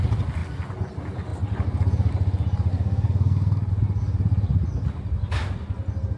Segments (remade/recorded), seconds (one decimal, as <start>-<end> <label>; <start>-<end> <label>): 0.0-2.7 recorded; 2.7-3.7 remade; 3.7-6.2 recorded